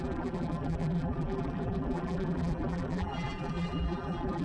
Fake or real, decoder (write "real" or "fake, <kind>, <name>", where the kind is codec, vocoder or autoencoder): fake, vocoder, BigVGAN v2